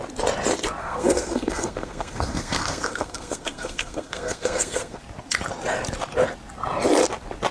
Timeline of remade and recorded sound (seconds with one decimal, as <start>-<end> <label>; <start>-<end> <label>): 0.0-0.8 recorded; 0.8-5.0 remade; 5.0-7.5 recorded